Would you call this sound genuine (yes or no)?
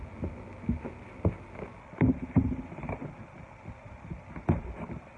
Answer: yes